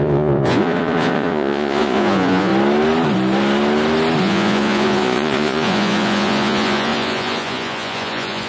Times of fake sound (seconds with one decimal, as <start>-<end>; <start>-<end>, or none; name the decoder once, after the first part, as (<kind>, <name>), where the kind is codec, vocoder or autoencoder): 0.0-2.5 (vocoder, Vocos); 4.2-8.5